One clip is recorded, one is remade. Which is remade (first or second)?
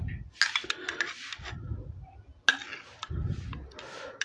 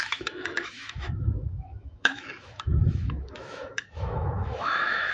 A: second